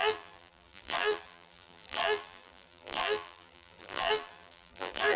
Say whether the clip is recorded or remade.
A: remade